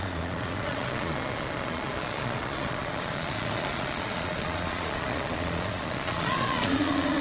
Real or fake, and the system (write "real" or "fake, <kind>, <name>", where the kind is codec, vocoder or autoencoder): fake, vocoder, Vocos